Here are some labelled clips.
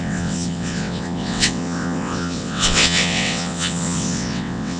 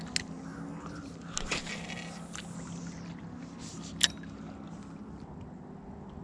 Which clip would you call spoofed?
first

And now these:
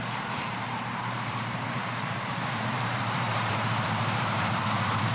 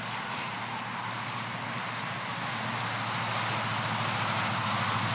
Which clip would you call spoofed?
first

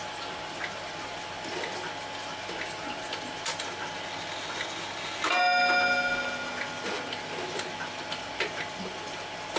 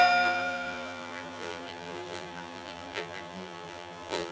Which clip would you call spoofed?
second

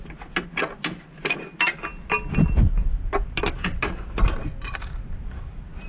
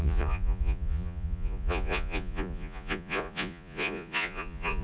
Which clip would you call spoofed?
second